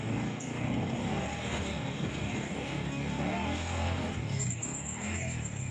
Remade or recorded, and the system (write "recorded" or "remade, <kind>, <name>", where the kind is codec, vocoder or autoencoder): remade, codec, DAC